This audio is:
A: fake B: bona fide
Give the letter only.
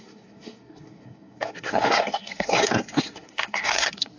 A